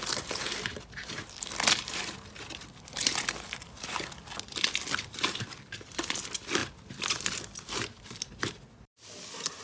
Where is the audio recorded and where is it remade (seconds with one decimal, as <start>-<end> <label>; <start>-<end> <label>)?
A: 0.0-3.0 remade; 3.0-4.6 recorded; 4.6-9.6 remade